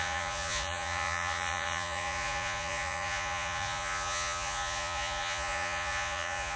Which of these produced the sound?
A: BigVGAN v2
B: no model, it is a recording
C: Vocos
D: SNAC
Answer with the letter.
C